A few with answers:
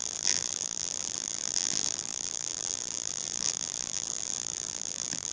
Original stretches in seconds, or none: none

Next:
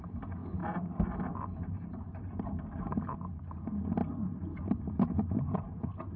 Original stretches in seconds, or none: 0.0-6.2

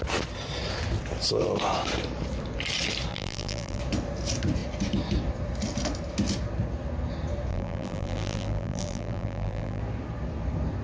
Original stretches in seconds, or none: 0.0-3.1; 3.8-7.5; 9.8-10.8

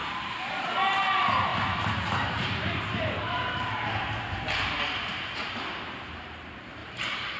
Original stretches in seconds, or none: 0.5-1.5; 5.8-6.8